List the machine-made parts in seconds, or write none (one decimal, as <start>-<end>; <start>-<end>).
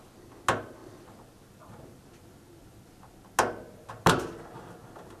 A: none